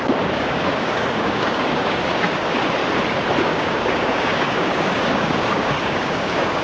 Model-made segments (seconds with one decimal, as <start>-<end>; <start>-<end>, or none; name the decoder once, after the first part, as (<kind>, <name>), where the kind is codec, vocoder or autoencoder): 0.0-2.8 (codec, DAC); 3.4-6.6